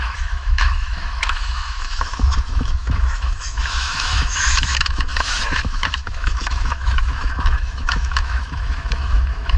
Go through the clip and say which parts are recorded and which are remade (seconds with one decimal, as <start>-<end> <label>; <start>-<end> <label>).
0.0-9.6 remade